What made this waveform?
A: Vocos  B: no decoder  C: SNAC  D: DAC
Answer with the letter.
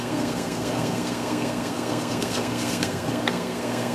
C